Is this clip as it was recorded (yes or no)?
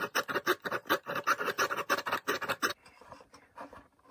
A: yes